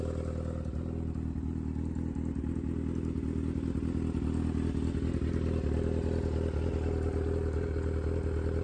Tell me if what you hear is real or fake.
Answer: real